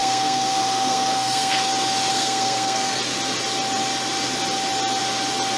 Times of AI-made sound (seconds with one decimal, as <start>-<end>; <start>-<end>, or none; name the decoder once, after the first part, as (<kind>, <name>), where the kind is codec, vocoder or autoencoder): 0.0-1.7 (codec, SNAC); 2.1-3.0